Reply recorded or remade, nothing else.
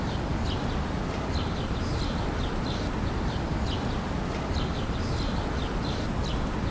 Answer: remade